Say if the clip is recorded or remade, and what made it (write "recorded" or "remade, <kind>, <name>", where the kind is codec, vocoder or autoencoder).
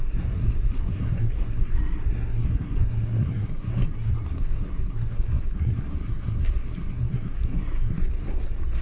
remade, codec, SNAC